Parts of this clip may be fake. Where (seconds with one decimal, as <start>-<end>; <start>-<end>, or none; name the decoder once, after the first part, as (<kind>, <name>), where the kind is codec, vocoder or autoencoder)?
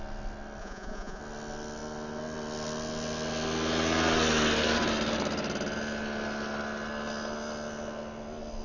0.6-1.2 (vocoder, Vocos)